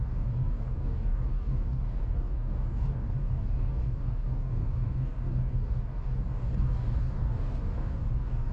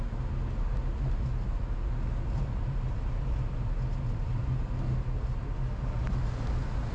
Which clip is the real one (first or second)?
second